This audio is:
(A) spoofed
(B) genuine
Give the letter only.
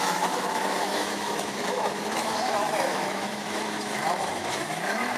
A